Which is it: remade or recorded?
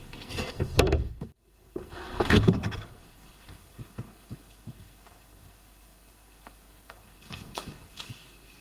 remade